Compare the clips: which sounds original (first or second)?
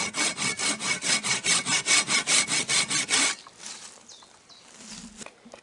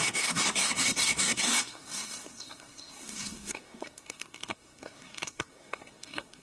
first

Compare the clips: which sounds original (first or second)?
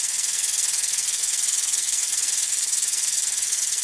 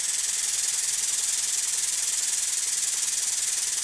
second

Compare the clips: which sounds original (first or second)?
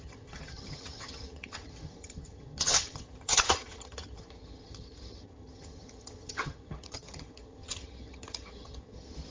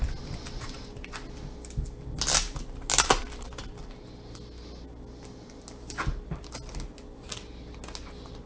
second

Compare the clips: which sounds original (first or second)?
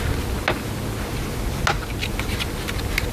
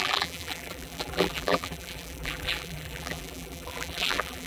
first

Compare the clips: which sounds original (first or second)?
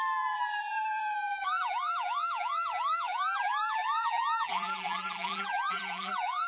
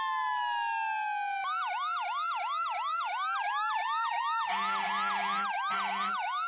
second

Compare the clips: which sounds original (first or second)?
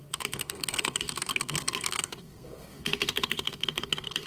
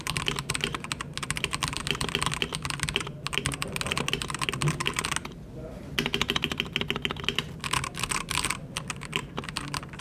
second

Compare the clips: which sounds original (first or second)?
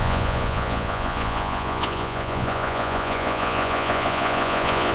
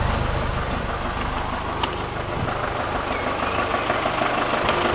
second